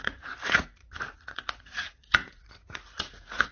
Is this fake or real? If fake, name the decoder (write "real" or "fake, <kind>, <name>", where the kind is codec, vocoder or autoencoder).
fake, vocoder, Vocos